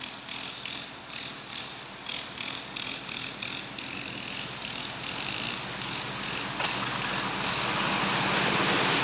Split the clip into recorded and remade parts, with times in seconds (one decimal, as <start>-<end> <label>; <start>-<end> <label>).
0.0-9.0 recorded